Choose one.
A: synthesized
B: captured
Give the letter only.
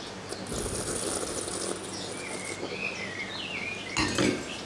B